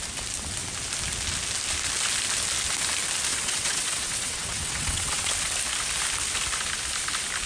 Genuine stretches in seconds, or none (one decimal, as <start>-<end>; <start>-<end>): 0.0-3.3; 5.3-7.5